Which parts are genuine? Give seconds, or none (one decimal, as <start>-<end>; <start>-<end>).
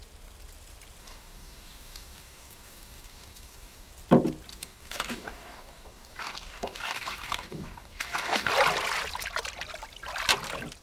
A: 0.0-1.0; 3.9-4.5; 8.5-10.8